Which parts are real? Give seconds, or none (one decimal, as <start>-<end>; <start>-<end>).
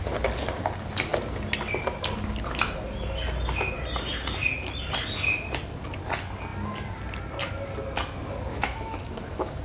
0.0-8.5